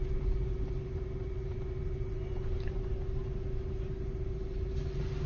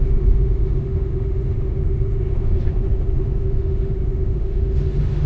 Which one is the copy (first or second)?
second